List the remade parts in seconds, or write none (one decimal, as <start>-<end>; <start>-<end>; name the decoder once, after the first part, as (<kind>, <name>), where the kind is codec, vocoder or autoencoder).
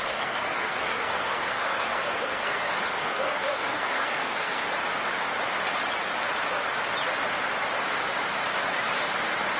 0.0-4.6 (codec, SNAC)